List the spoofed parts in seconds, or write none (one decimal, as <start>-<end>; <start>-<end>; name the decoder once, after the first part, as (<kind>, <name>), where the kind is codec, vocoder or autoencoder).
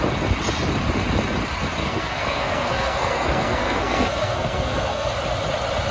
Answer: 1.8-5.1 (codec, SNAC)